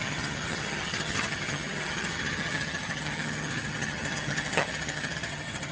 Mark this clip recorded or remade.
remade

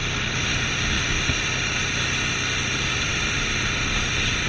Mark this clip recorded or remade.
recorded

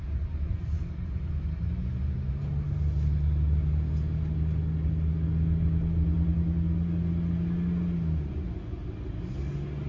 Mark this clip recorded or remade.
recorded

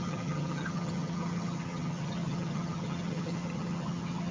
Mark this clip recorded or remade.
remade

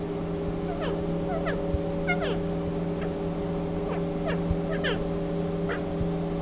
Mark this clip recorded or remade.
recorded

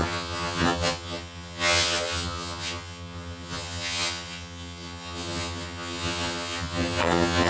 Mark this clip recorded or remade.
remade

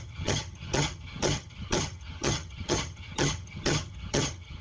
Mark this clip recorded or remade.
remade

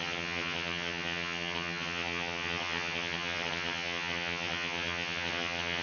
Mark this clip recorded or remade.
remade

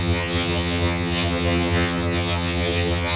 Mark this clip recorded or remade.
remade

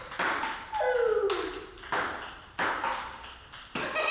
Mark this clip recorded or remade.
recorded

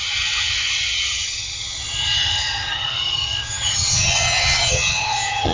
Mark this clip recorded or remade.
remade